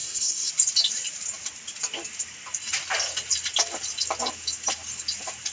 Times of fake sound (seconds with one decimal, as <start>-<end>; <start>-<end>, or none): 0.0-0.5